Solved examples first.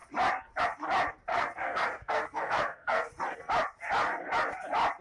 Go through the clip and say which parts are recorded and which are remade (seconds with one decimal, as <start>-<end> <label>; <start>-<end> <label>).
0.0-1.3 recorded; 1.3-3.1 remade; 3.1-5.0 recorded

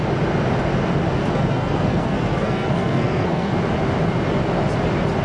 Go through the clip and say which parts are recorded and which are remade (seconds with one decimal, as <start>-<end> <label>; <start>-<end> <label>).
0.0-1.2 recorded; 1.2-3.5 remade; 3.5-5.2 recorded

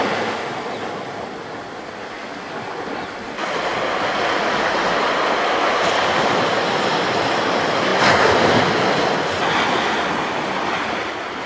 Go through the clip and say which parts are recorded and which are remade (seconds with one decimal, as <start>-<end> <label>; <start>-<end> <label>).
0.0-11.5 recorded

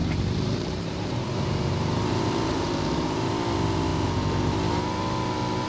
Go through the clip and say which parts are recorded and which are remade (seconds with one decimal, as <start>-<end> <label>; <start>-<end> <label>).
0.0-3.4 remade; 3.4-5.7 recorded